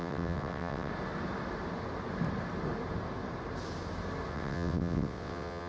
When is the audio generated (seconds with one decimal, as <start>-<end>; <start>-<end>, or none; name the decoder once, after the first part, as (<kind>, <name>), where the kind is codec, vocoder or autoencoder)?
0.0-0.9 (vocoder, WaveNeXt); 4.3-5.7